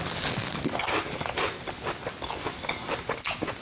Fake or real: real